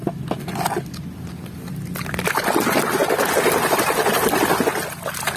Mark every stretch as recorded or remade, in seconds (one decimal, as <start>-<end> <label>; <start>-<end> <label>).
0.0-5.4 recorded